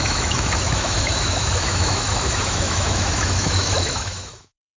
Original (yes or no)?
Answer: no